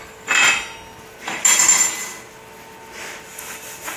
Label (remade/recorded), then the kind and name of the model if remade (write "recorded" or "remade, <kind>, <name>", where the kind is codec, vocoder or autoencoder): recorded